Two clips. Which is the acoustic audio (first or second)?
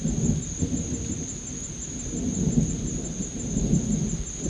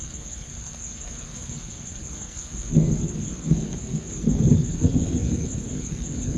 first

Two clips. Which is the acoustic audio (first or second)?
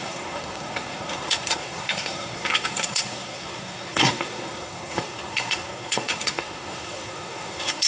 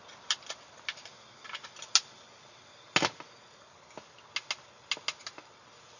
second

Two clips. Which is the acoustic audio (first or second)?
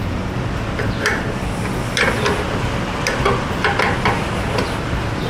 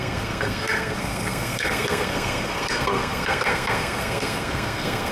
first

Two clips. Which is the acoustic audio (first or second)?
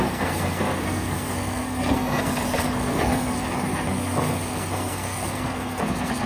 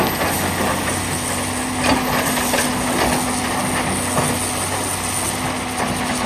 second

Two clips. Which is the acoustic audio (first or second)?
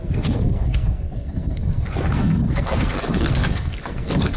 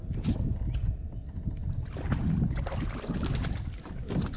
second